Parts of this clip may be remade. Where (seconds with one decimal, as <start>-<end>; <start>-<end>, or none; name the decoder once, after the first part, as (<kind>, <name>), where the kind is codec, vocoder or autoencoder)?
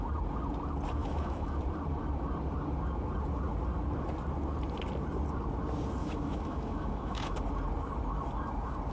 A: 1.0-1.6 (autoencoder, DAC-VAE); 6.0-7.4